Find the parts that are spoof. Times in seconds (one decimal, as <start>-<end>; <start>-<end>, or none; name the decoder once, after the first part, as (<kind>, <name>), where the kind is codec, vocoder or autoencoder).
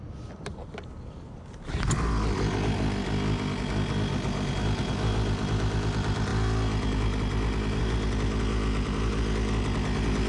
none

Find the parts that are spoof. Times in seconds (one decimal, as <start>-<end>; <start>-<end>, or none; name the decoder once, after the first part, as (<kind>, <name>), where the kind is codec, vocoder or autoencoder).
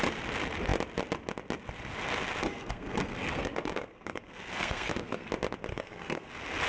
2.4-5.3 (codec, SNAC); 5.7-6.3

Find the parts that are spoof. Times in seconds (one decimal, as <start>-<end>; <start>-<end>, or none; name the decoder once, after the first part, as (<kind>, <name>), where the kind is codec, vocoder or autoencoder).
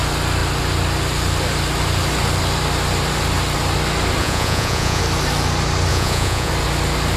4.2-5.0 (vocoder, Vocos); 5.9-6.5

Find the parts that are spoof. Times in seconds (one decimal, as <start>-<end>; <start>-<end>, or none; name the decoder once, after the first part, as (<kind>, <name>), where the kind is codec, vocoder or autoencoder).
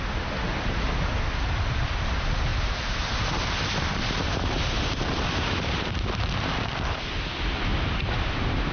2.5-6.7 (vocoder, BigVGAN v2); 7.7-8.7